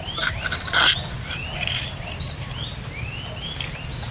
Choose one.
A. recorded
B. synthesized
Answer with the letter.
A